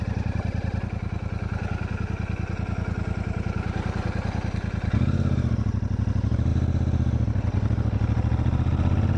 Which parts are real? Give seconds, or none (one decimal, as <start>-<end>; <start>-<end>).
0.0-9.2